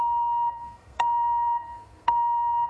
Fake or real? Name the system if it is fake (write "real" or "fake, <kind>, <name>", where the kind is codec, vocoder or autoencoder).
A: fake, codec, SNAC